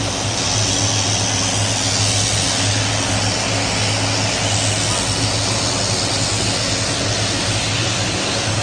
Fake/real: real